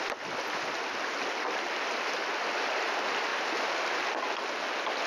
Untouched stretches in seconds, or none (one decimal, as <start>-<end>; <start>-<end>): 0.0-5.1